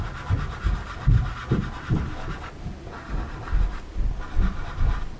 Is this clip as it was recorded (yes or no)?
yes